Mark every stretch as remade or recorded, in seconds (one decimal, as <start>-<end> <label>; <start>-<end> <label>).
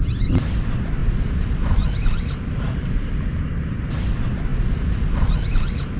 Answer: 0.0-1.0 recorded; 1.0-3.8 remade; 3.8-4.5 recorded; 4.5-5.3 remade; 5.3-6.0 recorded